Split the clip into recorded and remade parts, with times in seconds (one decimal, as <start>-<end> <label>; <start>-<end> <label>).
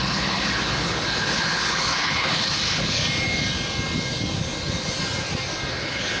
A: 0.0-3.0 remade; 3.0-5.7 recorded; 5.7-6.2 remade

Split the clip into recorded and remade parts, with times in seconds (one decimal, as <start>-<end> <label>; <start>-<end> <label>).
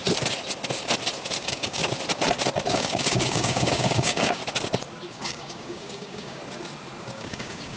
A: 0.0-1.4 recorded; 1.4-1.8 remade; 1.8-2.7 recorded; 2.7-4.4 remade; 4.4-5.1 recorded; 5.1-6.4 remade; 6.4-7.0 recorded; 7.0-7.8 remade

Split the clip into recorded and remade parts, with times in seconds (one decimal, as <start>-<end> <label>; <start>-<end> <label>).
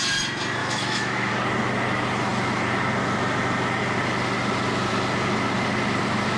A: 0.0-0.6 recorded; 0.6-1.3 remade; 1.3-6.4 recorded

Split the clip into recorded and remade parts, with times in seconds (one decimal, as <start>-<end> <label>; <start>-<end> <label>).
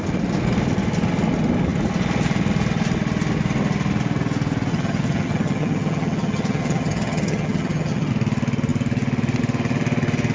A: 0.0-4.7 recorded; 4.7-8.1 remade; 8.1-10.3 recorded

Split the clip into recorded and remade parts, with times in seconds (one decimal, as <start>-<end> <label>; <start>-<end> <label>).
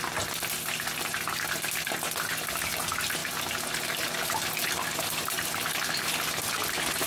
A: 0.0-7.1 recorded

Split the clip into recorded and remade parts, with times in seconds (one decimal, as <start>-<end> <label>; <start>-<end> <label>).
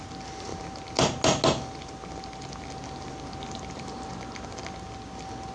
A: 0.0-5.5 recorded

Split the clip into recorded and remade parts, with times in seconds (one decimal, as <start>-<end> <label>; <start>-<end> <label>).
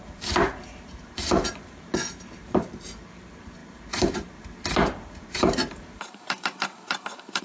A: 0.0-7.4 remade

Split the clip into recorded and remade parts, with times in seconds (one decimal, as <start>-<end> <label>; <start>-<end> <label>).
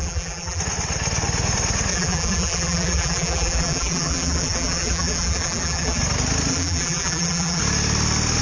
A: 0.0-0.6 remade; 0.6-1.9 recorded; 1.9-6.0 remade; 6.0-6.5 recorded; 6.5-7.6 remade; 7.6-8.4 recorded